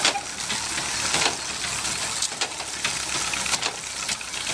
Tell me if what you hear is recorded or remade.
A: recorded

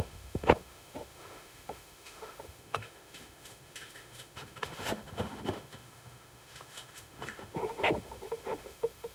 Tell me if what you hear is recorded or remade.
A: remade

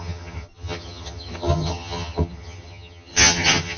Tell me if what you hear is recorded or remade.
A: remade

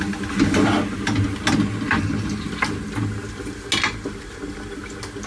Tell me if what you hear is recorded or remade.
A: recorded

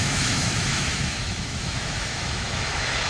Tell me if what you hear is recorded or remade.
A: remade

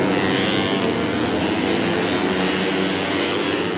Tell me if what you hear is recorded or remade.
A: recorded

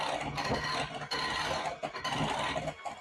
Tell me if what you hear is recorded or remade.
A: recorded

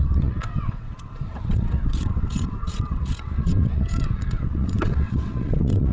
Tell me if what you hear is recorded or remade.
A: remade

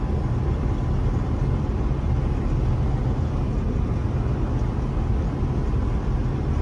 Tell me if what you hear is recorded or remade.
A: recorded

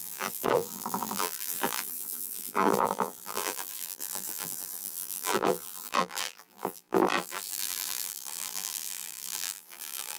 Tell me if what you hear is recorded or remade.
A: remade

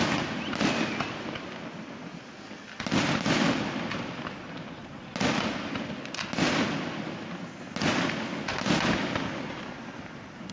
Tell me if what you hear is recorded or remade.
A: recorded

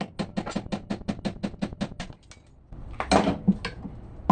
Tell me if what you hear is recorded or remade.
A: recorded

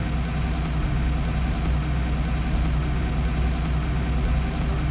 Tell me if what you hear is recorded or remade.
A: recorded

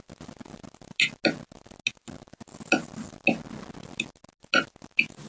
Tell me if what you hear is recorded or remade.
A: recorded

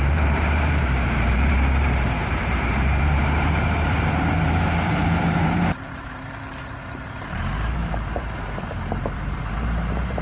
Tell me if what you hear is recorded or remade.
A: remade